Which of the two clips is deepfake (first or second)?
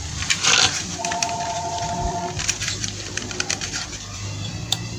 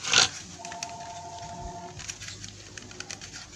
first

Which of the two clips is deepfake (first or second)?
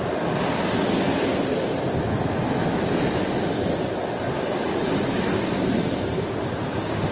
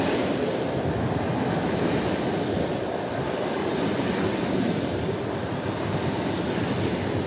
second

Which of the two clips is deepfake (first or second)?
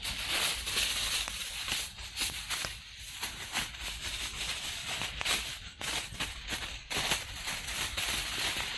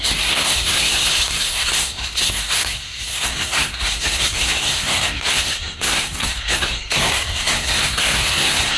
second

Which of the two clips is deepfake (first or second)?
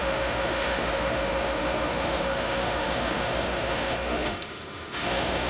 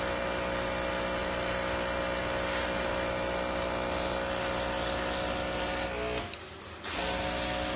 first